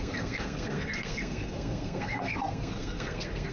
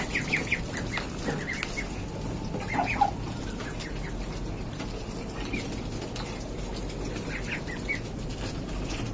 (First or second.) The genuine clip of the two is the second